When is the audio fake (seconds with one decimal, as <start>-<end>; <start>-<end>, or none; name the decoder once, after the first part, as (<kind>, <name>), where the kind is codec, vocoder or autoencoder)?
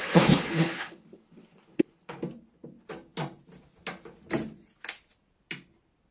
0.0-2.2 (codec, HILCodec)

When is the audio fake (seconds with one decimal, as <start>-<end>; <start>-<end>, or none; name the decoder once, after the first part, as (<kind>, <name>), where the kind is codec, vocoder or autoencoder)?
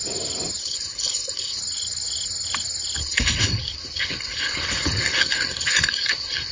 0.6-1.6 (codec, HILCodec); 3.0-6.5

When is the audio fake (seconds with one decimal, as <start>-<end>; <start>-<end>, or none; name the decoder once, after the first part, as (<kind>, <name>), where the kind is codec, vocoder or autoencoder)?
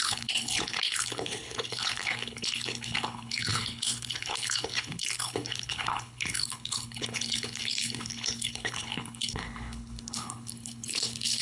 0.0-11.4 (codec, HILCodec)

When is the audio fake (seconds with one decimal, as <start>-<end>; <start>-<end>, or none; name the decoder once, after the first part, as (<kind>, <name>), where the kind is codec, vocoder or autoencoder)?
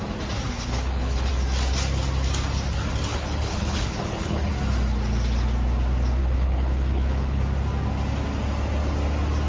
0.5-1.3 (codec, HILCodec); 3.1-4.5; 6.2-7.4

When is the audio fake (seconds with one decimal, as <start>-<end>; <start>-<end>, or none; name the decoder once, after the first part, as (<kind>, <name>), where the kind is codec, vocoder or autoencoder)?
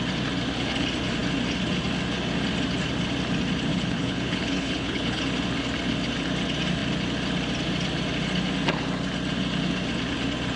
3.7-5.2 (codec, HILCodec)